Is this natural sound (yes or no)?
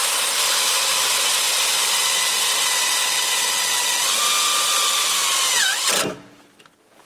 yes